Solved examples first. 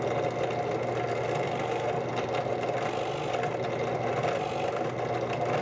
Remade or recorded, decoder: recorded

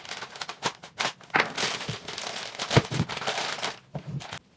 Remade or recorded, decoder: recorded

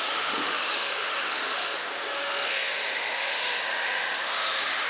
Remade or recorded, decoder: remade, autoencoder, DAC-VAE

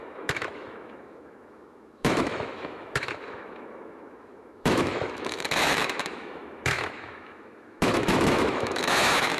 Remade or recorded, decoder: remade, autoencoder, DAC-VAE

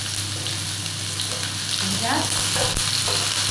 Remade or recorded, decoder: recorded